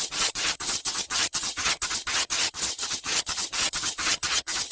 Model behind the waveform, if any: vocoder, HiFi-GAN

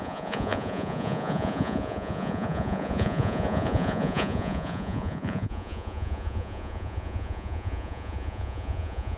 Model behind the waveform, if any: vocoder, Vocos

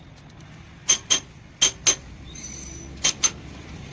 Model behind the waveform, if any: none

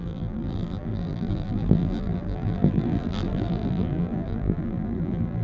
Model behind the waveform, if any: vocoder, BigVGAN v2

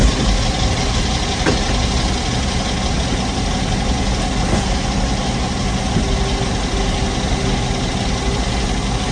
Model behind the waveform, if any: none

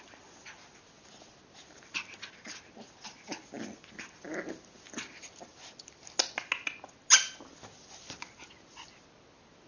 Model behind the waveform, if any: none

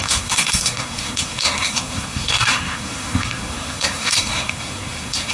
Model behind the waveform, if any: codec, SNAC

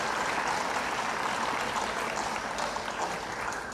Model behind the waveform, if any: none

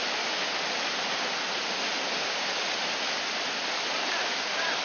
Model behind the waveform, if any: none